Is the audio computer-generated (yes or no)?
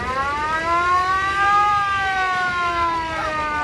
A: yes